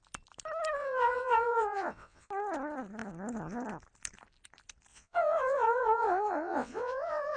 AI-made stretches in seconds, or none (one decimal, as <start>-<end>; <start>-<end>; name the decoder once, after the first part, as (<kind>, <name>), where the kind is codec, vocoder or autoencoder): 0.8-2.3 (vocoder, WaveNeXt); 4.9-7.4

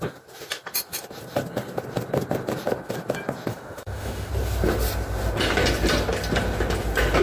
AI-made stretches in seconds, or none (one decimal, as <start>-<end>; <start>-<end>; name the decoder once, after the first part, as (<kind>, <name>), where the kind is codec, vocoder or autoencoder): 3.5-4.3 (autoencoder, DAC-VAE)